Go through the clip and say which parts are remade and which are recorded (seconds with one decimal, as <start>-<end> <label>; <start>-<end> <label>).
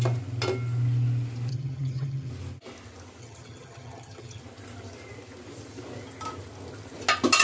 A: 0.0-1.5 recorded; 1.5-2.3 remade; 2.3-3.2 recorded; 3.2-4.4 remade; 4.4-7.4 recorded